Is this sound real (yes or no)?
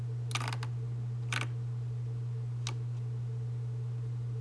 yes